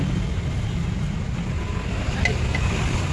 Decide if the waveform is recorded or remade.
recorded